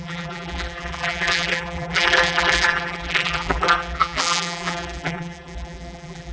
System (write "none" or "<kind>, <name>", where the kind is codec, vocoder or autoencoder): vocoder, BigVGAN v2